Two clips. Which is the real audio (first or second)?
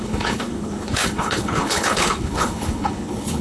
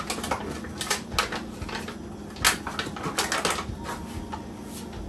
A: second